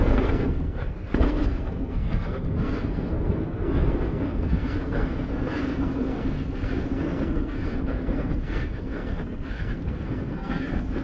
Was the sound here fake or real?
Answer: fake